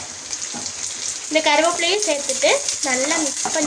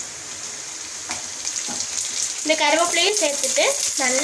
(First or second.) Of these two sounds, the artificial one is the second